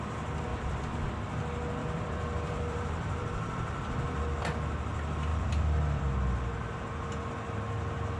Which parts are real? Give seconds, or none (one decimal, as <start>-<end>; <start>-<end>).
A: 0.0-0.5; 1.1-1.8; 4.2-5.3; 6.0-8.2